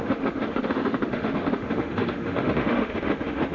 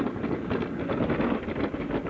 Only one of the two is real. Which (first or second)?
second